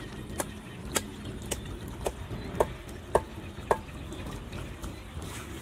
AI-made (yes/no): no